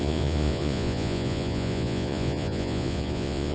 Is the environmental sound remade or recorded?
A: remade